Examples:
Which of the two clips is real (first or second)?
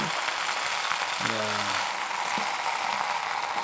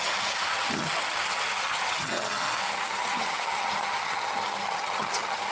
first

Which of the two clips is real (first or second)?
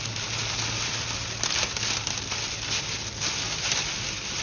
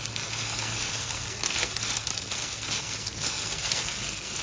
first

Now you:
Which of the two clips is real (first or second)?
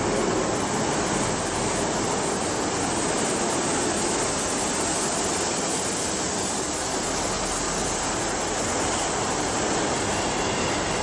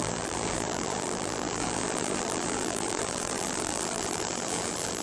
first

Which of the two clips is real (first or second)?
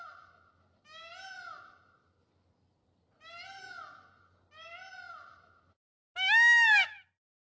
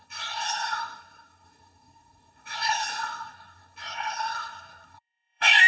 first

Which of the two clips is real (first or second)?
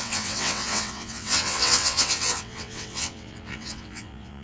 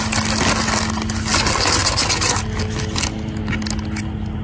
second